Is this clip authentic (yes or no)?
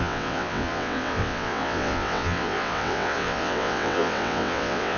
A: no